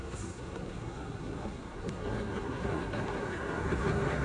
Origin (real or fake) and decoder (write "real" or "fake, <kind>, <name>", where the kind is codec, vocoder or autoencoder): fake, codec, SNAC